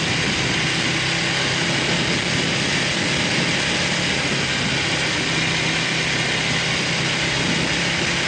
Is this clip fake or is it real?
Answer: real